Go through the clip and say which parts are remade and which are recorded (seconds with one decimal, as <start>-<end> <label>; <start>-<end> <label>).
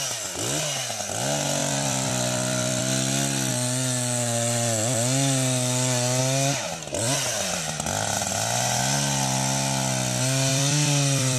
0.0-1.6 recorded; 1.6-2.8 remade; 2.8-10.5 recorded; 10.5-11.4 remade